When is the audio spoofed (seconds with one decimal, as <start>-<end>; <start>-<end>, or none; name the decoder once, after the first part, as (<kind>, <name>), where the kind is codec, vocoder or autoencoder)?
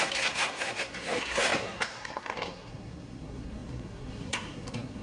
0.0-5.0 (codec, SNAC)